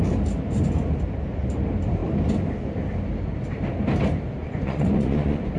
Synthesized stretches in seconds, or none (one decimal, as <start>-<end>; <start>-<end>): 4.4-5.6